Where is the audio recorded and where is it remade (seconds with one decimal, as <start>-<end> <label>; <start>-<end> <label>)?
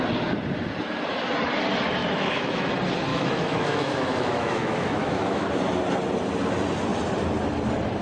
0.0-2.0 recorded; 2.0-2.7 remade; 2.7-3.1 recorded; 3.1-5.5 remade; 5.5-8.0 recorded